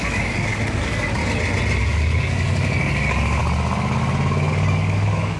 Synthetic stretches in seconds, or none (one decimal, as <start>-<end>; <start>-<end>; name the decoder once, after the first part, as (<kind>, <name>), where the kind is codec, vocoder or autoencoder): 0.0-1.2 (codec, DAC); 1.8-3.4; 4.5-5.4